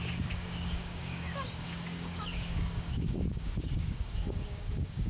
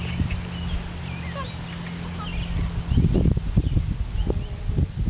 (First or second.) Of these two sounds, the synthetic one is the first